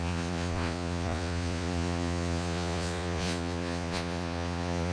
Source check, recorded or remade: remade